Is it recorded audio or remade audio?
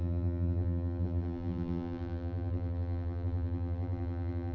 remade